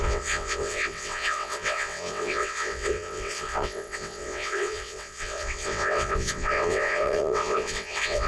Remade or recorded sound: remade